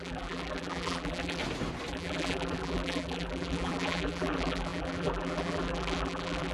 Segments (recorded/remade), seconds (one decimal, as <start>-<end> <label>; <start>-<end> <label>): 0.0-1.4 remade; 1.4-1.9 recorded; 1.9-6.5 remade